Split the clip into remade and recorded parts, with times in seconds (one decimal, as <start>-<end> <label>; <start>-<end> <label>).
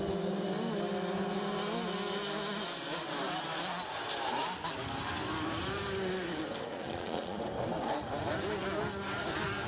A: 0.0-6.7 recorded; 6.7-7.4 remade; 7.4-9.7 recorded